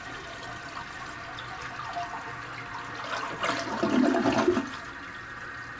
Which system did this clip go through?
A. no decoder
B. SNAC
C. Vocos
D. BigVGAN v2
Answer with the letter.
A